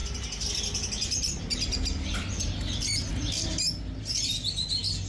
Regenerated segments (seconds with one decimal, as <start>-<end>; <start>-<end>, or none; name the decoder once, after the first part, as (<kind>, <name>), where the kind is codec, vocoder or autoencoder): none